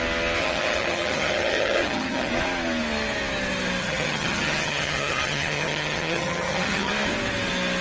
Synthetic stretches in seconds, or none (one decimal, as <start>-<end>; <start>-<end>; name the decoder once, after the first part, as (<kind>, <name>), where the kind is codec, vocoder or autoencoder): 0.4-2.3 (vocoder, HiFi-GAN); 3.8-6.9